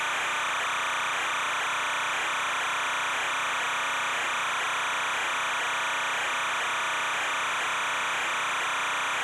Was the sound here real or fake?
real